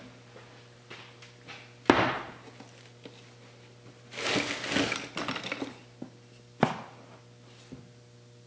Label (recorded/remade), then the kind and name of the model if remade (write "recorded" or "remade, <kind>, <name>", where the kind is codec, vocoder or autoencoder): recorded